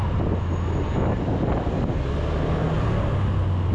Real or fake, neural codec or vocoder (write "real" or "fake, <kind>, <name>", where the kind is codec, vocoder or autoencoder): real